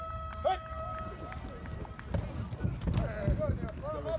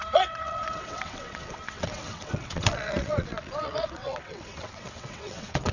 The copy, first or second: second